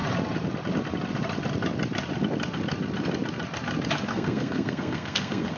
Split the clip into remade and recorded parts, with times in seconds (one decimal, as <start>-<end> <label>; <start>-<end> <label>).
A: 0.0-4.1 recorded; 4.1-5.6 remade